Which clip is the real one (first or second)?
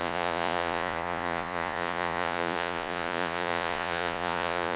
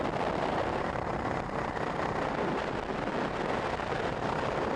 second